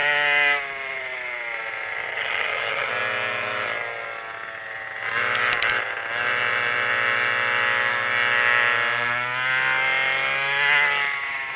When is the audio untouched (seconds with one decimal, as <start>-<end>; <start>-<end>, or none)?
0.0-2.1; 2.9-11.6